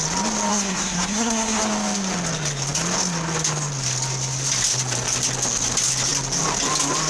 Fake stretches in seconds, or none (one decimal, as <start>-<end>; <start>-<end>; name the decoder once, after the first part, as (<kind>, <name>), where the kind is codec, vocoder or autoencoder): 0.5-1.6 (codec, SNAC)